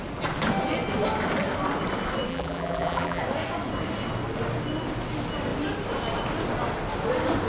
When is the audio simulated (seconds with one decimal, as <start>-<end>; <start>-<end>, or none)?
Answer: 2.3-3.2

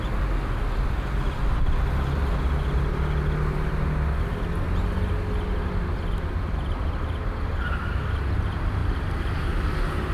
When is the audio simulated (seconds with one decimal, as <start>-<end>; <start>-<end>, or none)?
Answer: 8.8-9.6

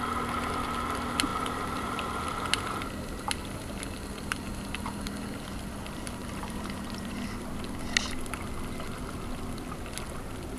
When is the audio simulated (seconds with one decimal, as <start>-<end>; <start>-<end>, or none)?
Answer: 1.3-2.0; 6.2-7.1

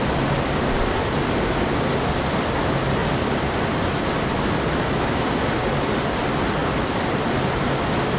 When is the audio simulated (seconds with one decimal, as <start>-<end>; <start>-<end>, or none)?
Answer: none

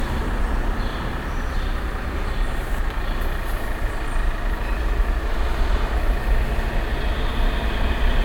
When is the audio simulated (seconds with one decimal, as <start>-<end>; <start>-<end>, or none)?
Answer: 0.9-2.8

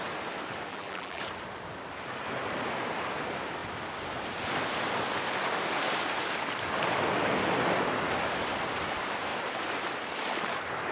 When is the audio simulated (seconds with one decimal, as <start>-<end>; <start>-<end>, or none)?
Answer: 0.7-1.2

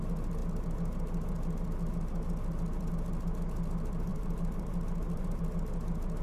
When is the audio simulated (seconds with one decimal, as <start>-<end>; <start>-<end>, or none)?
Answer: 4.1-5.4

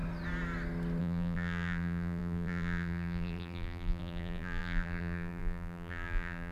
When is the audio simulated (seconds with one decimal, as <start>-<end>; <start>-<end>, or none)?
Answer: 1.0-6.5